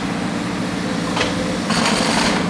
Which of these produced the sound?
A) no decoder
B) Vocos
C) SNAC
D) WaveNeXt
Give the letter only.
A